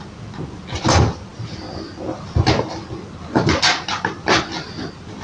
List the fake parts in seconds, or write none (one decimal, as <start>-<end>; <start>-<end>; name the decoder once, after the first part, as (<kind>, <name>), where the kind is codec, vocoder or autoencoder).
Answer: none